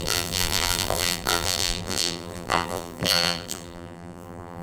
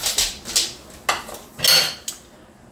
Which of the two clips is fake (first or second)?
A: first